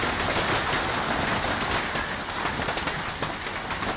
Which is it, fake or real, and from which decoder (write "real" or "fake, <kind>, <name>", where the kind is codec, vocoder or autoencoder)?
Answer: real